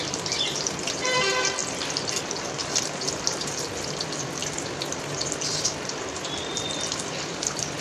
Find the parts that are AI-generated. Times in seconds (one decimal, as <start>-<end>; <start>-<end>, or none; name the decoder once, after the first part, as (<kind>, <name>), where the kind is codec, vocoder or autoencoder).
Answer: 0.0-4.4 (vocoder, BigVGAN v2); 5.0-7.8